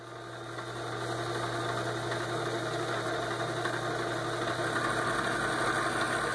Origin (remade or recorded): recorded